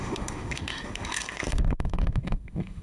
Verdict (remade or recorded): remade